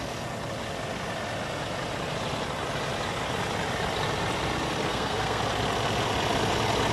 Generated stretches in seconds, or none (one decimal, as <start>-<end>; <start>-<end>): 4.9-5.4